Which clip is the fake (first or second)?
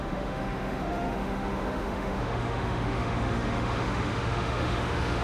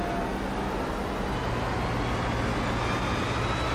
first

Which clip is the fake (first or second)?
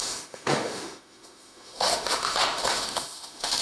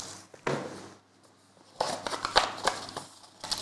first